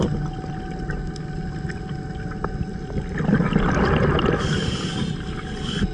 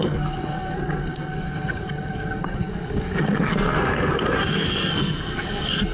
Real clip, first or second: first